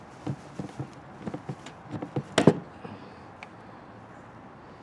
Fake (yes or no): no